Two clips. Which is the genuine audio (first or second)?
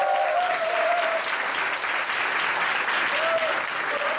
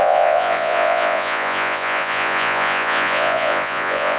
first